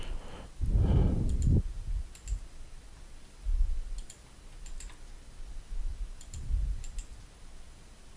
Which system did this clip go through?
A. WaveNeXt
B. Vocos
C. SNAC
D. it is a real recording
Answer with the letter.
D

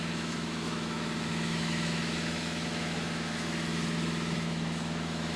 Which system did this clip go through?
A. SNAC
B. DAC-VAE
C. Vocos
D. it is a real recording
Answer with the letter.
B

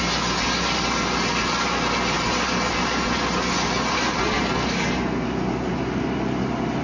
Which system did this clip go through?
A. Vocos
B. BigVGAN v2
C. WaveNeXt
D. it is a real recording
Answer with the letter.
D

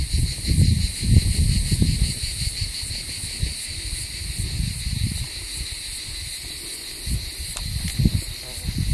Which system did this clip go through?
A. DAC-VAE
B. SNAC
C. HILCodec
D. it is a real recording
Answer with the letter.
D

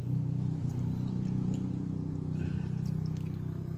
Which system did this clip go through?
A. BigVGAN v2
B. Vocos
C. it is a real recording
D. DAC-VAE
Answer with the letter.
C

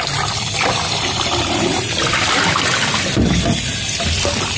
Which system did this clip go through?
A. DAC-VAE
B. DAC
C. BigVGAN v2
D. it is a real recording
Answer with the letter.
C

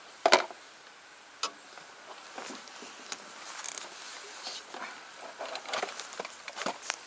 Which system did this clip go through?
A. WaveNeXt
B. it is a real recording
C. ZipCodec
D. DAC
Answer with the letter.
B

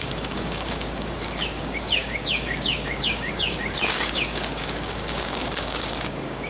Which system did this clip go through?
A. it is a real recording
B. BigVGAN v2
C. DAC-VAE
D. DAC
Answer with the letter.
D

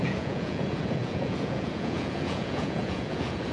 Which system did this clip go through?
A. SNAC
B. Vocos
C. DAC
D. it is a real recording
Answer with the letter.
B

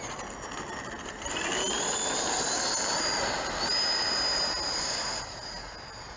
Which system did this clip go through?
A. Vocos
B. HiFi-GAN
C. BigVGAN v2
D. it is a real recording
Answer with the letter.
D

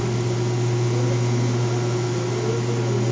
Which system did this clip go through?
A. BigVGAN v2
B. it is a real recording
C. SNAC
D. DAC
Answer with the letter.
B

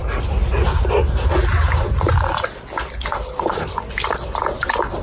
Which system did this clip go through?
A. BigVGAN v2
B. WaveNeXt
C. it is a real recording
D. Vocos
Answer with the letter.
C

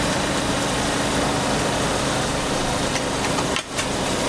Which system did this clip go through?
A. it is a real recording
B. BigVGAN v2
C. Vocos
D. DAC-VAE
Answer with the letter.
A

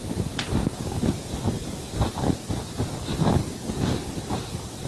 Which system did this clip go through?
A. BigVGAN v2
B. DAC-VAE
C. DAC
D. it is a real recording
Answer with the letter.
D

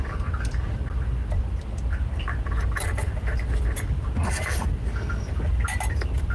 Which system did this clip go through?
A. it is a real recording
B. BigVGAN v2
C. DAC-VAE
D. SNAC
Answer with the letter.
A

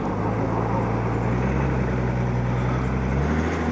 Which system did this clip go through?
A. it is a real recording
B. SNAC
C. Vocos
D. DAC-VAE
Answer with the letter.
A